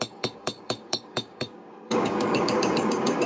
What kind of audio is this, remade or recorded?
remade